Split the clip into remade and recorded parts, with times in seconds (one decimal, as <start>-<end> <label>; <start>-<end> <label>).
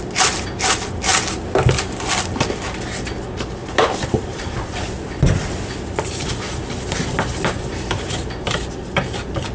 0.0-3.6 recorded; 3.6-8.7 remade; 8.7-9.5 recorded